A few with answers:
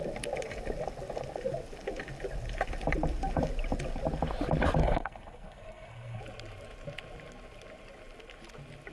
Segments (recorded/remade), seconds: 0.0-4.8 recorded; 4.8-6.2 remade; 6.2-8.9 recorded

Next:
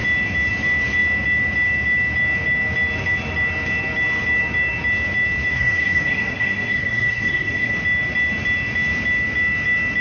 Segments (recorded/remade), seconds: 0.0-5.5 recorded; 5.5-7.7 remade; 7.7-10.0 recorded

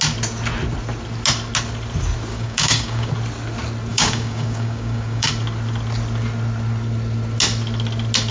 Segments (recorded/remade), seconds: 0.0-2.3 recorded; 2.3-3.1 remade; 3.1-3.9 recorded; 3.9-5.3 remade; 5.3-8.3 recorded

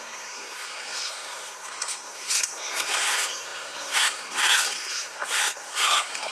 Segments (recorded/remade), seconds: 0.0-6.3 remade

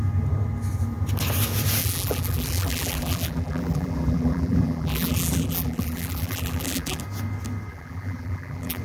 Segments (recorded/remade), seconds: 0.0-1.8 recorded; 1.8-7.0 remade; 7.0-7.7 recorded; 7.7-8.8 remade